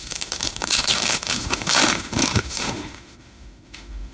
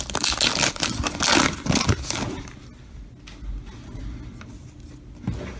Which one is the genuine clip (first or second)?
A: second